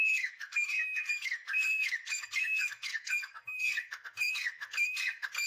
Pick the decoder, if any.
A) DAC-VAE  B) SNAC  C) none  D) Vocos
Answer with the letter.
B